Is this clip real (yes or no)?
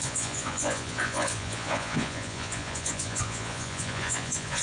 no